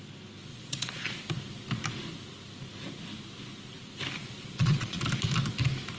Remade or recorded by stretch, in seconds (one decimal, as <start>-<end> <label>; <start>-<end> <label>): 0.0-0.5 recorded; 0.5-1.2 remade; 1.2-4.2 recorded; 4.2-5.0 remade; 5.0-6.0 recorded